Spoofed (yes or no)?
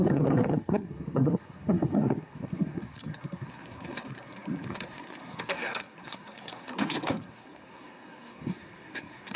yes